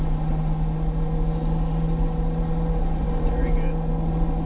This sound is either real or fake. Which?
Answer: real